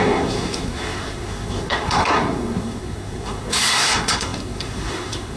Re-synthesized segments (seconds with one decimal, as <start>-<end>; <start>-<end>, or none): 0.0-5.4